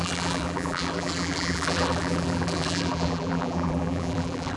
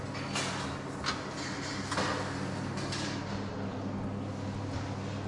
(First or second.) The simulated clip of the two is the first